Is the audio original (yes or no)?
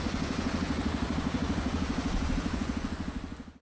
no